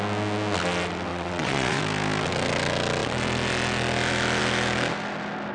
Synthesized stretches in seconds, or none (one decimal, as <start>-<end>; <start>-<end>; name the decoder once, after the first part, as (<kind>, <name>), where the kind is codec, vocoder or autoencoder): 1.1-1.8 (vocoder, WaveNeXt)